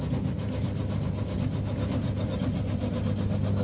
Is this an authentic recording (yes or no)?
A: yes